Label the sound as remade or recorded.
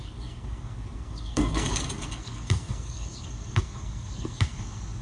remade